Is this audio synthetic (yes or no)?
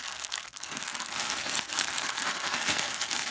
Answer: yes